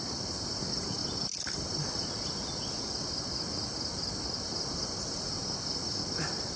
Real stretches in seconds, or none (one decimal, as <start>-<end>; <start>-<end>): 0.0-6.6